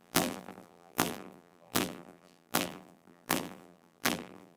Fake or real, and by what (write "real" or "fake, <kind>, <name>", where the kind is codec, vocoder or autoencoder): fake, vocoder, BigVGAN v2